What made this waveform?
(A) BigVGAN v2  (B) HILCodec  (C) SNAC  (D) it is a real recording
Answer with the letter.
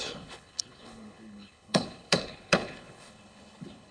B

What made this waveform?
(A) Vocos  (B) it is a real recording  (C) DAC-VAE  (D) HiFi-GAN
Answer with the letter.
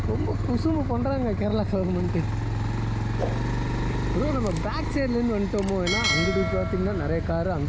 B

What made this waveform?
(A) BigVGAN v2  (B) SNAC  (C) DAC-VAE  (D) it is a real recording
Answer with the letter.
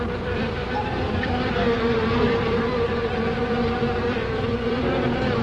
A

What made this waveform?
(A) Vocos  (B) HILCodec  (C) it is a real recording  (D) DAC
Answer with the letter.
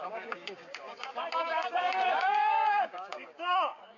D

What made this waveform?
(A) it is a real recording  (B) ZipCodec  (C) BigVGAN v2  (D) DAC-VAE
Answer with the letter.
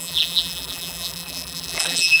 C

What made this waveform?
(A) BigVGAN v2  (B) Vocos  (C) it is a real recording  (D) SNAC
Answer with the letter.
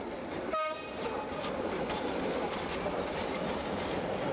C